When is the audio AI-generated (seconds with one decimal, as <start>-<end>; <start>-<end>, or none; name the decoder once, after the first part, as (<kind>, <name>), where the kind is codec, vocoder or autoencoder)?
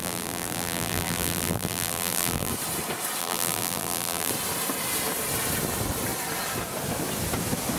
0.0-2.5 (vocoder, BigVGAN v2); 3.2-4.3